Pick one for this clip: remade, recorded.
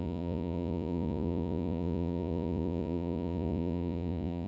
remade